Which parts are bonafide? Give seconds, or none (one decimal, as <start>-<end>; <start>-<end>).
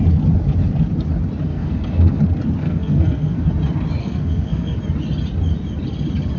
0.0-1.5; 2.2-2.6; 3.5-4.0; 4.8-6.4